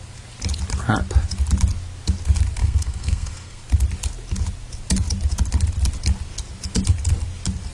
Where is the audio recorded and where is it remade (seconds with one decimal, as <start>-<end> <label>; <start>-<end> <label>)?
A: 0.0-2.6 recorded; 2.6-3.6 remade; 3.6-7.7 recorded